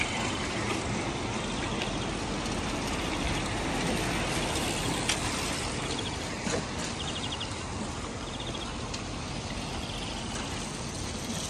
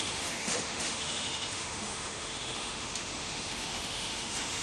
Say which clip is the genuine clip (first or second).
first